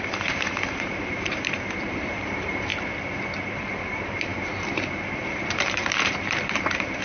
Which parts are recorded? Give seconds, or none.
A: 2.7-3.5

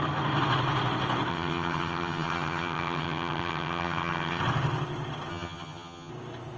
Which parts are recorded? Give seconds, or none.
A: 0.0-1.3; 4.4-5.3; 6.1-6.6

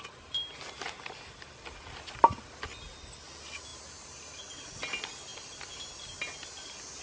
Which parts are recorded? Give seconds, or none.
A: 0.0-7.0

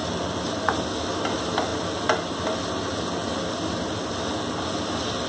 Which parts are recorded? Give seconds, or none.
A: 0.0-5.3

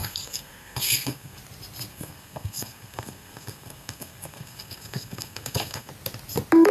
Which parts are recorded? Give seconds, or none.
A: 1.4-1.9; 5.9-6.7

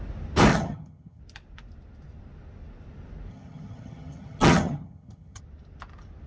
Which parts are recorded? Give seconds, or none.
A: 0.0-0.5; 1.2-3.3; 5.4-6.3

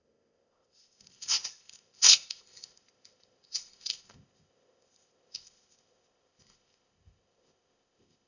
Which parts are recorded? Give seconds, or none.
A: none

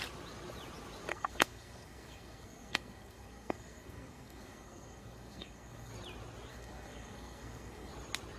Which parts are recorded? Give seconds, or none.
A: 0.0-1.1; 5.9-6.5; 7.9-8.4